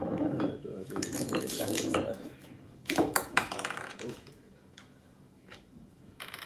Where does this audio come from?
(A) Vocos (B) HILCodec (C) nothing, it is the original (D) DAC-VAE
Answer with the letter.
D